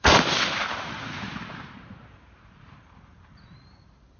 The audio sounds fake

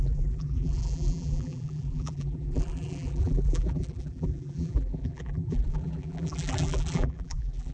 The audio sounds fake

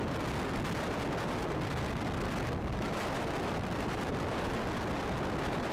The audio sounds real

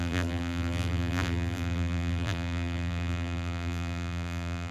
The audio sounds fake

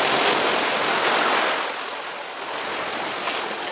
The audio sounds real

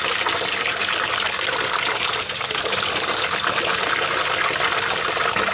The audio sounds real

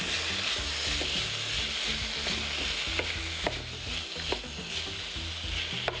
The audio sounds real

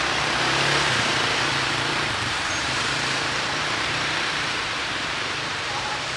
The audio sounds fake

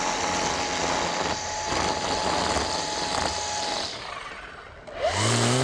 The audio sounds real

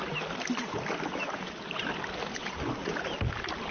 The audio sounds real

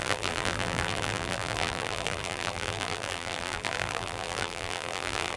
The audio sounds fake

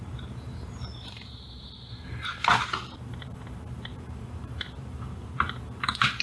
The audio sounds fake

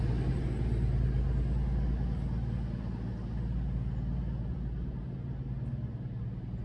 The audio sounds real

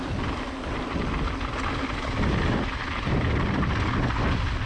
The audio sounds real